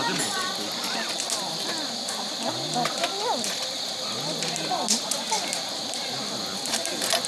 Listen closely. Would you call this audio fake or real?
real